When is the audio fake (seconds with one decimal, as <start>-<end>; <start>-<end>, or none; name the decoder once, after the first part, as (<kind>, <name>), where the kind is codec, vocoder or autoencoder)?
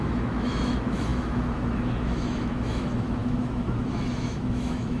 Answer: 0.0-5.0 (autoencoder, DAC-VAE)